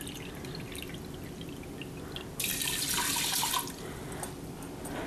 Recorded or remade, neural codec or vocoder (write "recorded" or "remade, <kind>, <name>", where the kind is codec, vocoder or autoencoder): recorded